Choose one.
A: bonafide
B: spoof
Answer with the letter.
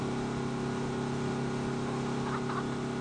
A